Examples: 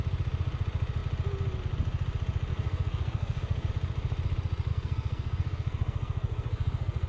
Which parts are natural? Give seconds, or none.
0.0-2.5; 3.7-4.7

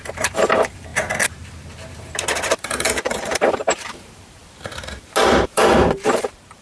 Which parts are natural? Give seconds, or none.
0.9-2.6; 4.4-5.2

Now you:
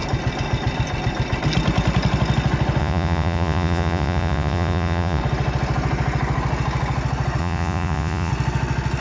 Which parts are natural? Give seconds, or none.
0.0-2.8; 5.2-7.4; 8.3-9.0

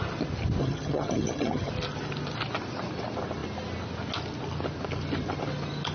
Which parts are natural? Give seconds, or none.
0.0-0.6; 1.7-5.9

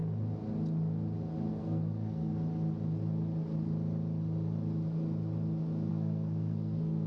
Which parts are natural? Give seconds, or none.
0.0-1.5; 2.3-5.9

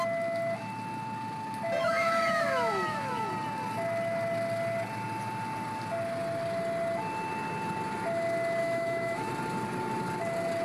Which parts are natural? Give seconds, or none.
0.0-1.8; 3.3-8.6; 9.3-10.6

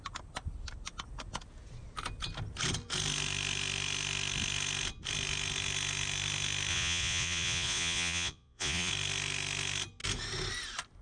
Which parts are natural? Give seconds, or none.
0.0-6.7; 8.9-11.0